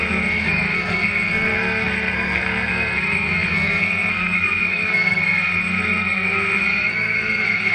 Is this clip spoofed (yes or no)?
yes